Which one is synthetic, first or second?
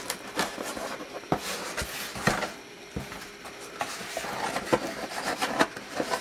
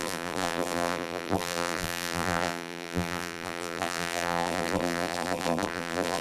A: second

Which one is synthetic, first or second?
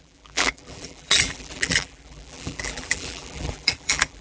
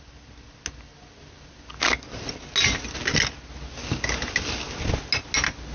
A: first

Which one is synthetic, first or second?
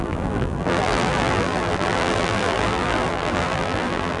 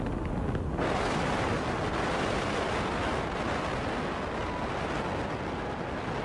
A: first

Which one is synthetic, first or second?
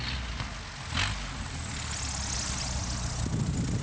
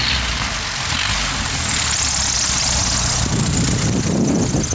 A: second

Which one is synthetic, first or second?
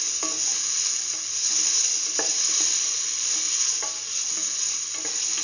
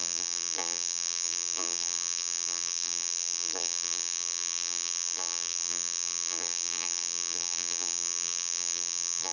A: second